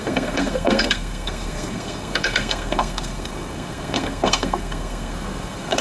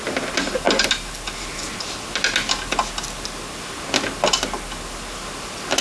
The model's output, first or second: first